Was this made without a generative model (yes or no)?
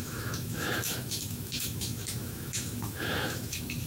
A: no